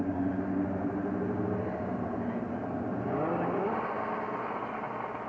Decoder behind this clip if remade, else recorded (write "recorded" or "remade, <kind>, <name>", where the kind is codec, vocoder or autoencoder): recorded